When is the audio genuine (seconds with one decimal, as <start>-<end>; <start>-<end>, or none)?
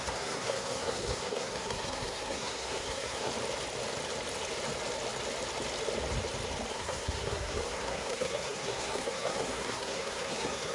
3.3-6.7